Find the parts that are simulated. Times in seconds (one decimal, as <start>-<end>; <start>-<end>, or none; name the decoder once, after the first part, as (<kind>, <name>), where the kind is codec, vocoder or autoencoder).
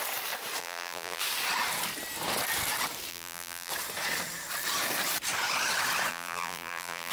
0.6-1.2 (vocoder, BigVGAN v2); 3.1-3.7; 6.1-7.1